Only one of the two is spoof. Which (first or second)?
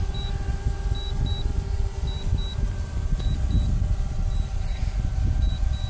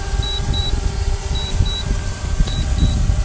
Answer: second